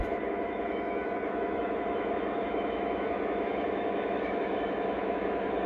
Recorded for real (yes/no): no